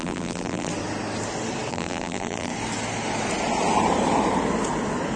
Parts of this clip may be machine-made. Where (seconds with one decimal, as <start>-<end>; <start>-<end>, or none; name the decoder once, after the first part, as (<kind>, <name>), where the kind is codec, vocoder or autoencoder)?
0.0-0.7 (vocoder, BigVGAN v2); 1.7-2.5